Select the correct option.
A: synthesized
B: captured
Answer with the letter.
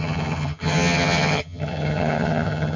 A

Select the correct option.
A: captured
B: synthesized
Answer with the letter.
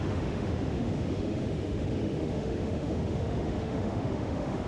B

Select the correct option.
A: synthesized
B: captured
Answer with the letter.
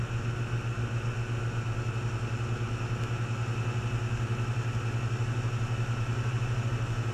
B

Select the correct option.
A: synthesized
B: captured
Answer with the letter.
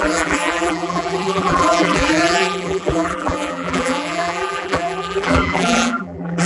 A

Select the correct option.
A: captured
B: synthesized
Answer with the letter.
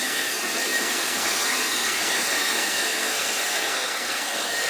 B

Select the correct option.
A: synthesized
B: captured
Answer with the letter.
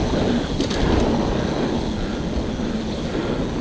B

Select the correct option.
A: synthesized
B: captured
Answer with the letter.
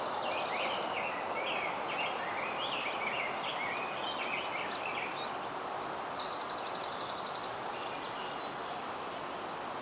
B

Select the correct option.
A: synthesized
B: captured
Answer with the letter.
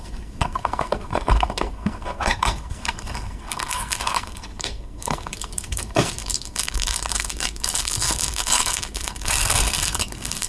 A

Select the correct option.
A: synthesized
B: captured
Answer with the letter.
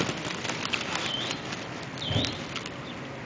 B